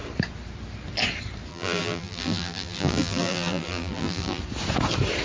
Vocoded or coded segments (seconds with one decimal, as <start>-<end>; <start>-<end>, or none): 1.5-4.4